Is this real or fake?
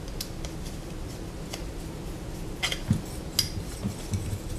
real